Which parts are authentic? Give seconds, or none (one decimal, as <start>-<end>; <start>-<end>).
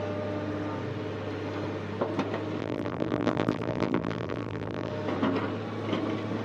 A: 0.0-2.6; 4.9-6.4